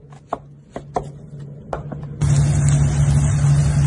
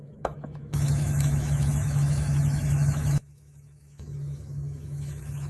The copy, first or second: second